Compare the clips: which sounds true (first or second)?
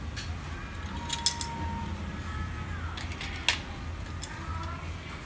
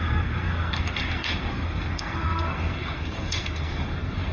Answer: first